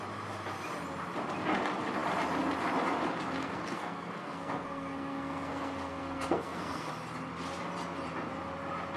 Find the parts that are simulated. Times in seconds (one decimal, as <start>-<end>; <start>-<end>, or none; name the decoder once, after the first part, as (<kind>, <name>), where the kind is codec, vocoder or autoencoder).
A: 3.4-6.9 (codec, SNAC)